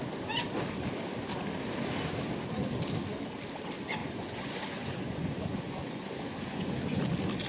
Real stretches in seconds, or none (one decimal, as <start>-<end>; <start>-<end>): 0.0-4.0; 7.0-7.5